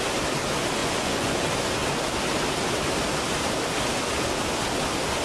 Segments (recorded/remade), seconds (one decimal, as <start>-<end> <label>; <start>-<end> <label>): 0.0-0.8 recorded; 0.8-1.4 remade; 1.4-5.2 recorded

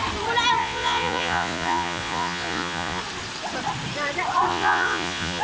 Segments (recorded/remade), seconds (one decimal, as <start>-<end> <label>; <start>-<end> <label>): 0.0-0.6 recorded; 0.6-3.0 remade; 3.0-4.5 recorded; 4.5-5.4 remade

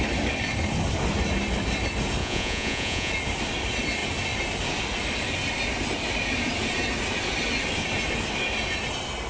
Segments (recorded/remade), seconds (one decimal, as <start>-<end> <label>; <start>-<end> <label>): 0.0-2.2 recorded; 2.2-3.1 remade; 3.1-9.3 recorded

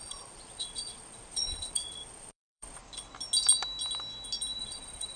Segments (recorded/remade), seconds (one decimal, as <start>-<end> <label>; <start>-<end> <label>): 0.0-2.8 remade; 2.8-4.6 recorded; 4.6-5.2 remade

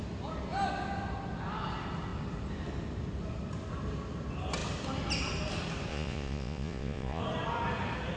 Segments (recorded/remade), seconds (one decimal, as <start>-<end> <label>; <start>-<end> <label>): 0.0-5.9 recorded; 5.9-7.2 remade; 7.2-8.2 recorded

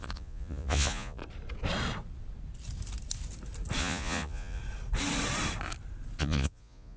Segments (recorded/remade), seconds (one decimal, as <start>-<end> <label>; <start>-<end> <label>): 0.0-1.2 remade; 1.2-3.8 recorded; 3.8-4.6 remade; 4.6-6.2 recorded; 6.2-7.0 remade

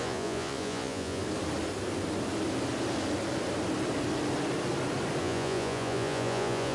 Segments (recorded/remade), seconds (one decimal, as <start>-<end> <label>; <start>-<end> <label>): 0.0-1.2 remade; 1.2-5.2 recorded; 5.2-6.7 remade

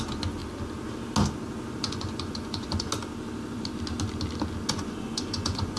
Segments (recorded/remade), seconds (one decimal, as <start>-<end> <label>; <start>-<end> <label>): 0.0-0.4 remade; 0.4-1.8 recorded; 1.8-2.9 remade; 2.9-4.7 recorded; 4.7-5.8 remade